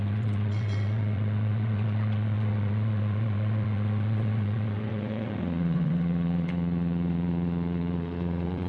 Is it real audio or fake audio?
fake